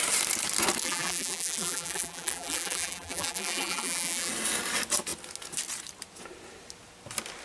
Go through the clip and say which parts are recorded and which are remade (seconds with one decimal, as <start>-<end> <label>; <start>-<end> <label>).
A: 0.0-0.8 recorded; 0.8-4.3 remade; 4.3-7.4 recorded